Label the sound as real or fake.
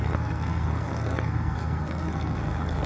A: fake